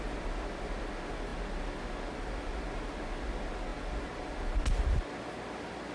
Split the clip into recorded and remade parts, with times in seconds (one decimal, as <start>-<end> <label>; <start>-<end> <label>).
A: 0.0-5.9 recorded

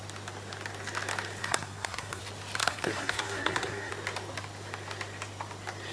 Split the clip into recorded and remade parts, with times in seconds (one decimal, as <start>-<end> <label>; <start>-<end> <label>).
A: 0.0-1.4 recorded; 1.4-2.2 remade; 2.2-2.6 recorded; 2.6-3.9 remade; 3.9-5.9 recorded

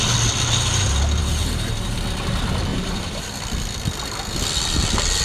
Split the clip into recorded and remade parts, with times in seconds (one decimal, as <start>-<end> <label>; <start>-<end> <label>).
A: 0.0-1.2 recorded; 1.2-2.0 remade; 2.0-2.7 recorded; 2.7-3.2 remade; 3.2-5.2 recorded

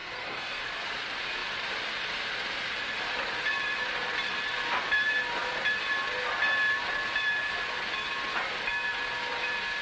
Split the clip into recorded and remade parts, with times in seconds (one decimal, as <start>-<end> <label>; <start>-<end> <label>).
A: 0.0-0.6 remade; 0.6-9.8 recorded

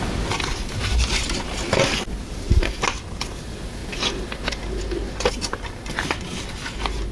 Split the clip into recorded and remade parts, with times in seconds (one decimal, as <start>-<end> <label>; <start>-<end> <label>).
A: 0.0-7.1 recorded

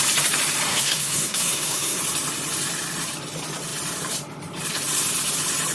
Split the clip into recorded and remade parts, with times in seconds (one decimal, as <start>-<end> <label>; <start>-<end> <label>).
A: 0.0-0.7 recorded; 0.7-2.0 remade; 2.0-5.7 recorded

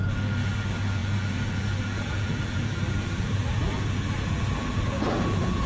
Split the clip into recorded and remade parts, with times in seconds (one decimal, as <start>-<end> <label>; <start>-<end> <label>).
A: 0.0-5.7 remade

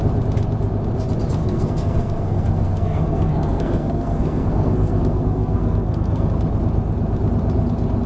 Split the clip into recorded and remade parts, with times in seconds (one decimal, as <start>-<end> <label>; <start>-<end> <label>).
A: 0.0-1.4 recorded; 1.4-6.3 remade; 6.3-8.1 recorded